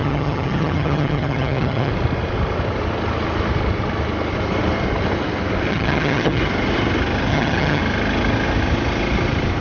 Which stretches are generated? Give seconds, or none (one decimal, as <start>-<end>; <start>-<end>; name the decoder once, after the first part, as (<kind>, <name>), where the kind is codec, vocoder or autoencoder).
0.0-1.9 (vocoder, HiFi-GAN); 5.7-6.4; 7.3-7.8